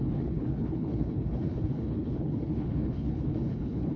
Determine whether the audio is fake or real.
fake